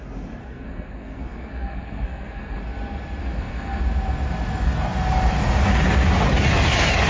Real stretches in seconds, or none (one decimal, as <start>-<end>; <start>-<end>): 0.0-0.4; 2.6-3.2; 3.8-7.1